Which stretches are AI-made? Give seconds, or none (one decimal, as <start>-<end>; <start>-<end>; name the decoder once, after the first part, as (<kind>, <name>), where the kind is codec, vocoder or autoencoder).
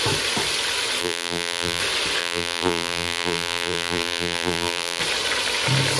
1.0-1.8 (vocoder, BigVGAN v2); 2.2-5.0